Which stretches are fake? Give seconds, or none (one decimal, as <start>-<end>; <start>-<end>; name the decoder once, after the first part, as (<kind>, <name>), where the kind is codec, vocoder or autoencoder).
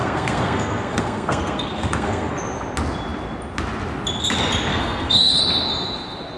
0.0-2.3 (codec, SNAC); 4.7-5.4